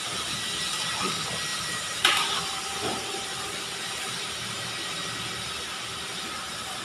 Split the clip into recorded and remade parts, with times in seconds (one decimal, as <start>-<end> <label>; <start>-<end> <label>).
0.0-1.5 recorded; 1.5-3.2 remade; 3.2-6.8 recorded